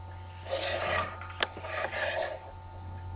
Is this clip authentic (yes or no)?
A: yes